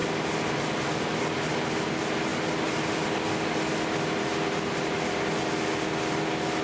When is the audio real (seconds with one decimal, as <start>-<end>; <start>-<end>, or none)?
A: 0.0-6.6